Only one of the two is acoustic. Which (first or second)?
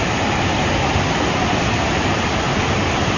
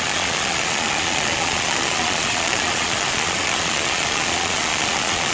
first